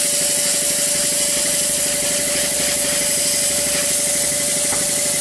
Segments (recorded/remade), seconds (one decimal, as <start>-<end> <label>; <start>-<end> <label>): 0.0-5.2 recorded